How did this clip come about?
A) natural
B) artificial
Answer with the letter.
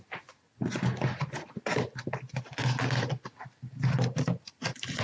A